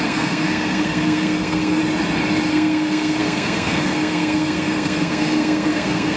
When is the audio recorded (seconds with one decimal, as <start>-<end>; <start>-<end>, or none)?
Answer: 1.8-2.5